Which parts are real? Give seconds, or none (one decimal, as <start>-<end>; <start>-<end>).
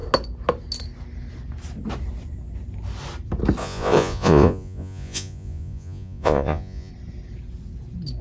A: 0.0-3.6; 6.9-8.2